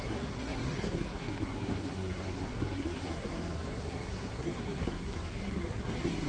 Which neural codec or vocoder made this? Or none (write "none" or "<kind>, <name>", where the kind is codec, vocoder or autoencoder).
codec, SNAC